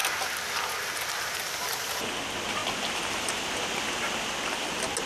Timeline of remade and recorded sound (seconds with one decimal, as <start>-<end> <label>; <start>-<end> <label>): 0.0-5.1 recorded